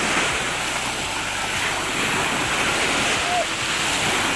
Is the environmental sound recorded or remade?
recorded